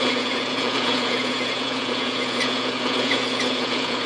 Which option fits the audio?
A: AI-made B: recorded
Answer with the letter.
A